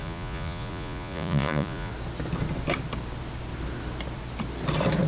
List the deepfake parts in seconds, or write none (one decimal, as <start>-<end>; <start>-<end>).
0.0-1.9